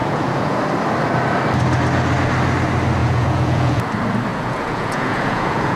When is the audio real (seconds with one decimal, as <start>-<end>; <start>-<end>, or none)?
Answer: 0.6-3.0; 3.9-4.3